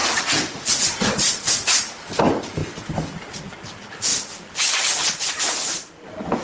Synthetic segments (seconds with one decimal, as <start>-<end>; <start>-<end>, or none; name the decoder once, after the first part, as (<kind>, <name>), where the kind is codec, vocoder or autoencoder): none